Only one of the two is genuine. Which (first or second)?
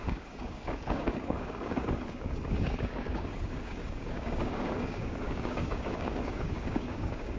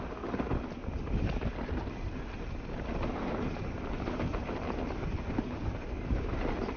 second